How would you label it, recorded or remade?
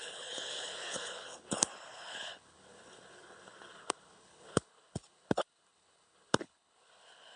remade